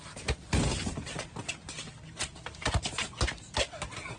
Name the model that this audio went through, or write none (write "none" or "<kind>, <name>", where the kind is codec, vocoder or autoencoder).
none